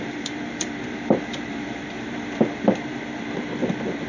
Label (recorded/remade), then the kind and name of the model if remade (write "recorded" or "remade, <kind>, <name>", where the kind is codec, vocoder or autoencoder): remade, vocoder, BigVGAN v2